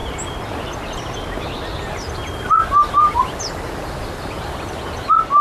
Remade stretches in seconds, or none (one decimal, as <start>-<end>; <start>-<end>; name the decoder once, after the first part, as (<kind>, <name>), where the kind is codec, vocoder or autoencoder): none